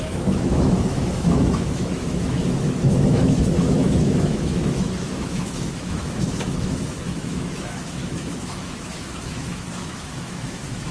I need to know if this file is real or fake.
fake